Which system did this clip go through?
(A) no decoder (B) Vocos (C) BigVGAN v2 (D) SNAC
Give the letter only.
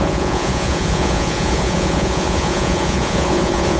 B